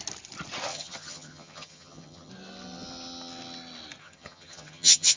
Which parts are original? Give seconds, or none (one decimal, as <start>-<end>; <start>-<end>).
0.0-0.7; 2.3-4.0